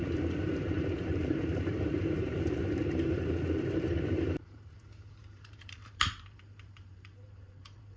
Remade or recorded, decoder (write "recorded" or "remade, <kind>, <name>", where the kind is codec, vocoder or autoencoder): remade, vocoder, BigVGAN v2